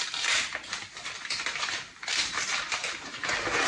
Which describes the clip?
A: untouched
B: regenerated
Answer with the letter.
A